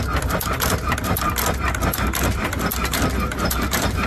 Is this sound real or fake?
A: real